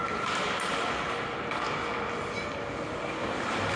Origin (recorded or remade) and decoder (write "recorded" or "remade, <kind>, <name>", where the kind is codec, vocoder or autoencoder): recorded